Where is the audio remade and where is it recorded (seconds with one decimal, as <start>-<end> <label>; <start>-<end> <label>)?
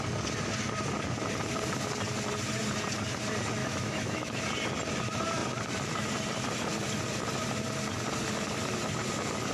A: 0.0-3.6 recorded; 3.6-4.4 remade; 4.4-9.5 recorded